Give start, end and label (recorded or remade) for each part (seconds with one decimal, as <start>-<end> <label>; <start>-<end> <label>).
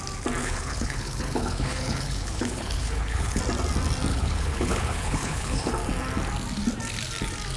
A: 0.0-0.4 recorded; 0.4-3.4 remade; 3.4-4.1 recorded; 4.1-5.7 remade; 5.7-7.6 recorded